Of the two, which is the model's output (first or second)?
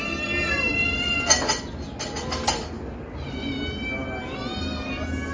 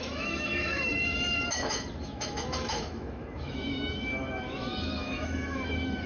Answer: second